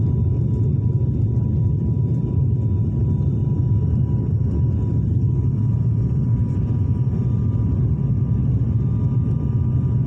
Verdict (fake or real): real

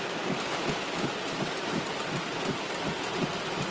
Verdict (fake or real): fake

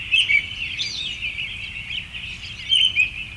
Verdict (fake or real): real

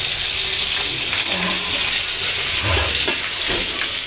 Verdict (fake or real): real